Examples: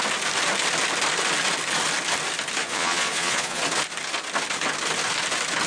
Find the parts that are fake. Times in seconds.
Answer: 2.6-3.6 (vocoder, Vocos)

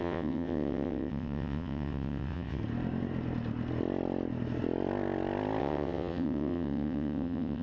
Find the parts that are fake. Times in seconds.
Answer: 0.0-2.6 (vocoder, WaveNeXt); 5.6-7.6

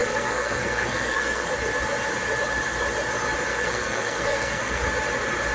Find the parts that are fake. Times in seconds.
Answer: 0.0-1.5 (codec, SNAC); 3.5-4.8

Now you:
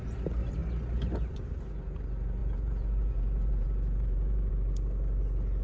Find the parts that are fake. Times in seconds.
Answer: 2.4-4.5 (vocoder, Vocos)